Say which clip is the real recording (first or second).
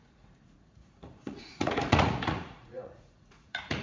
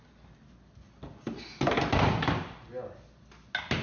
second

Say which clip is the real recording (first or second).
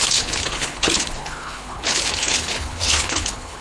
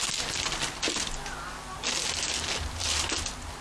second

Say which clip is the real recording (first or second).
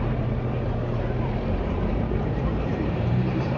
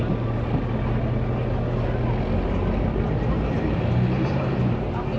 second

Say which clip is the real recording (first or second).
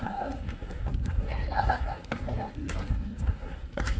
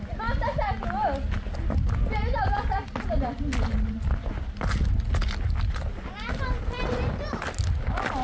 second